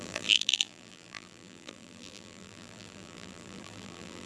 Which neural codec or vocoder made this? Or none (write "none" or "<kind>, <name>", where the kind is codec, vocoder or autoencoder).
vocoder, BigVGAN v2